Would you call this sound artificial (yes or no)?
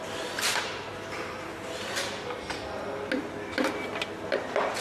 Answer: no